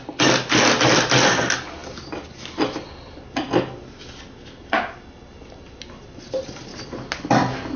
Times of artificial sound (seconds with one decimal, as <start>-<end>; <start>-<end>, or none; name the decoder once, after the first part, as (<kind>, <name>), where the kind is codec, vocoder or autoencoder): none